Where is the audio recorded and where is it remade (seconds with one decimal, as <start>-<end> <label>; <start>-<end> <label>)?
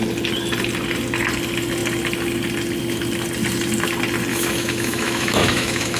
0.0-4.3 recorded; 4.3-6.0 remade